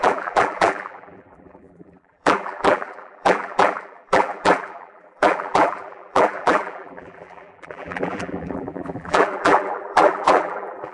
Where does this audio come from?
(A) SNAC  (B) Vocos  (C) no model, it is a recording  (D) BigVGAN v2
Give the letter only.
D